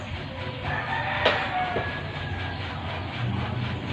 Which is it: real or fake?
real